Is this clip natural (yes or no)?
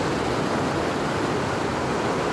yes